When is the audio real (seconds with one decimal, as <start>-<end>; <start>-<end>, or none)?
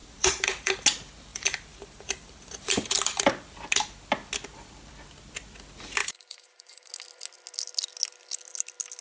0.7-1.3; 3.7-6.0; 6.9-9.0